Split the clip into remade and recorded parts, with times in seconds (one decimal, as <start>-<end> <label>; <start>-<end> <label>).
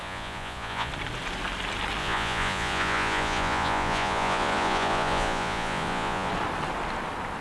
0.0-0.9 remade; 0.9-2.0 recorded; 2.0-6.3 remade; 6.3-7.4 recorded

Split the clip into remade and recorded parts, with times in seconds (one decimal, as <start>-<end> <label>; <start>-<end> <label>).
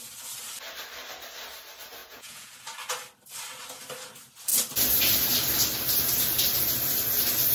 0.0-2.0 recorded; 2.0-2.6 remade; 2.6-7.5 recorded